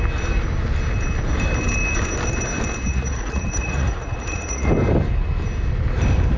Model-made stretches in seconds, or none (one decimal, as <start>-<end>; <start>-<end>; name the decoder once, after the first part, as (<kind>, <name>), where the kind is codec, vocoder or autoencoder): 2.9-4.7 (vocoder, Vocos)